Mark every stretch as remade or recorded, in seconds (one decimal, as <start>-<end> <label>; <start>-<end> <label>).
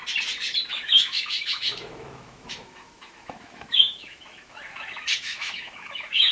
0.0-0.7 recorded; 0.7-6.3 remade